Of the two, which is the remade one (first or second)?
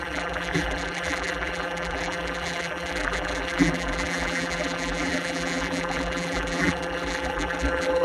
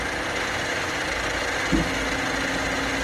first